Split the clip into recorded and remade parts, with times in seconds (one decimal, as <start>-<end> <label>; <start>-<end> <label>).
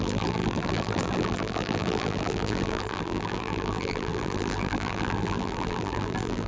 0.0-6.5 remade